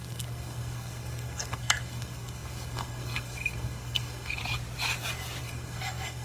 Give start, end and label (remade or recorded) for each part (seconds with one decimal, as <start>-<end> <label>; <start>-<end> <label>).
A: 0.0-4.4 remade; 4.4-5.4 recorded; 5.4-6.2 remade